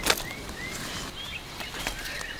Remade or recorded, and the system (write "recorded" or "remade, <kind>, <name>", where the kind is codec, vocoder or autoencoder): recorded